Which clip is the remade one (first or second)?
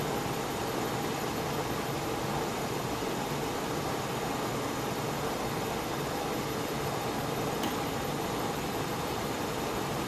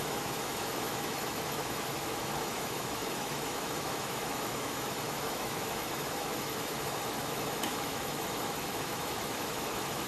second